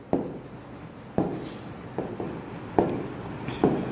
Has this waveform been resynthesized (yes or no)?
no